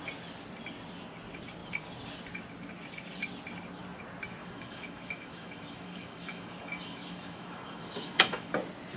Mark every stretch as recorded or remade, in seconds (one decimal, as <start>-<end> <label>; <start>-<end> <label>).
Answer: 0.0-4.4 recorded; 4.4-8.5 remade; 8.5-9.0 recorded